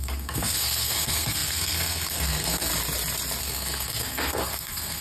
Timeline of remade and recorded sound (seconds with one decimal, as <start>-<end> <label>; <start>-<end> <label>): 0.0-2.7 remade; 2.7-3.4 recorded; 3.4-5.0 remade